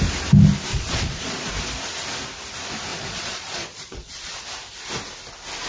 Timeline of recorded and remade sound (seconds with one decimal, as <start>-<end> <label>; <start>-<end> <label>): 0.0-0.7 recorded; 0.7-1.5 remade; 1.5-2.9 recorded; 2.9-4.4 remade; 4.4-5.7 recorded